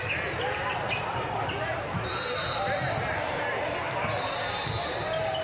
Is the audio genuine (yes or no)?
yes